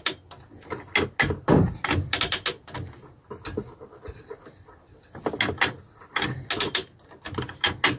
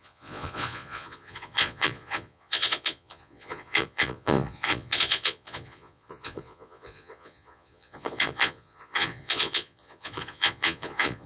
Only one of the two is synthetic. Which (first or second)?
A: second